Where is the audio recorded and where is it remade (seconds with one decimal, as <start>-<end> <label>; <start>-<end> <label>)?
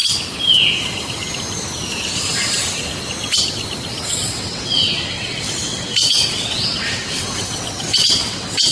0.0-4.1 recorded; 4.1-8.7 remade